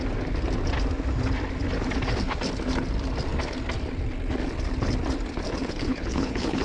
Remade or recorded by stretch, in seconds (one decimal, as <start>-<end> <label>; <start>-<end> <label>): 0.0-5.6 recorded; 5.6-6.6 remade